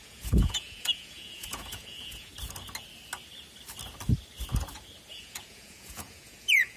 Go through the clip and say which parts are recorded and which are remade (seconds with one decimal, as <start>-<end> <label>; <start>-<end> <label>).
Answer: 0.0-2.3 remade; 2.3-5.1 recorded; 5.1-6.8 remade